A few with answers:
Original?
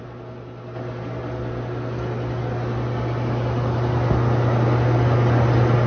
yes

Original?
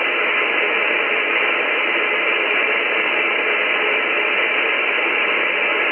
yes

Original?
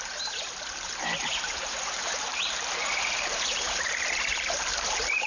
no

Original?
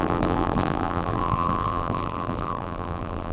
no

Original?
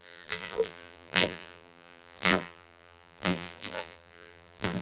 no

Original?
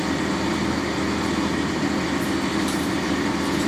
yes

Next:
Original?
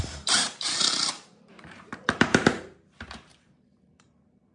no